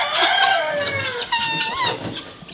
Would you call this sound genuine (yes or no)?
yes